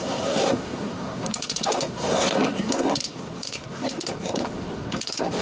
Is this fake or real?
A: fake